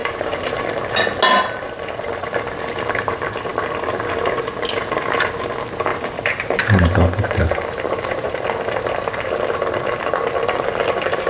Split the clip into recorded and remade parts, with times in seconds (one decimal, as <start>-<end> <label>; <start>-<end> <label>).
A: 0.0-0.6 remade; 0.6-5.9 recorded; 5.9-8.3 remade; 8.3-11.3 recorded